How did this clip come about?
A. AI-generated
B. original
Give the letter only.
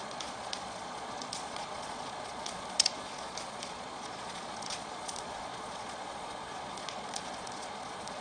A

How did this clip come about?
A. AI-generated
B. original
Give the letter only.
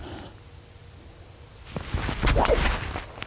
B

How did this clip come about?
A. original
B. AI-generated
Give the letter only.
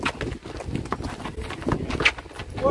A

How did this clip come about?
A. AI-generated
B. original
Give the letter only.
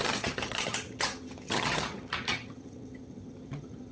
A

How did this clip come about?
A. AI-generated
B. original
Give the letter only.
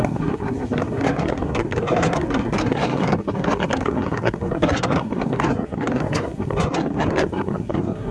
A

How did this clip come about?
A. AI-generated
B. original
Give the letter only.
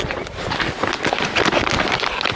B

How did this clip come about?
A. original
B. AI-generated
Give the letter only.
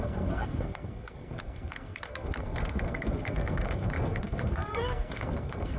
B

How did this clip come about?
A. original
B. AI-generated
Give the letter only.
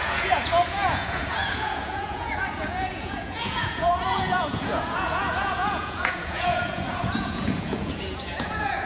B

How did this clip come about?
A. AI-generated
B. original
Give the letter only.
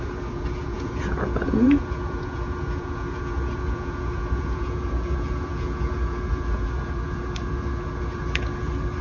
A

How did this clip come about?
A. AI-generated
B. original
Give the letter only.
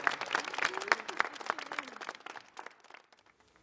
B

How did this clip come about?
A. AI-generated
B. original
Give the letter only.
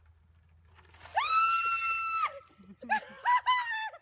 B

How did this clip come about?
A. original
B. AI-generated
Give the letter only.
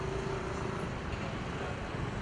A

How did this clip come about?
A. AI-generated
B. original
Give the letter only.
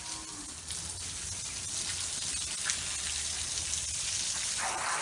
B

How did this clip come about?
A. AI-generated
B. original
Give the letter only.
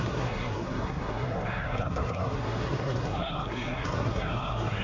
A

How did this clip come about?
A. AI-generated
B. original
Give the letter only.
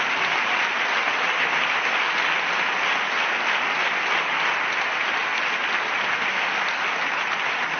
B